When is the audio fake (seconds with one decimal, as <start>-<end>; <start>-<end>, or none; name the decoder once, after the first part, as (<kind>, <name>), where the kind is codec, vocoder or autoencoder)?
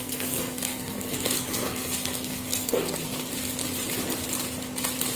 0.0-3.3 (codec, SNAC)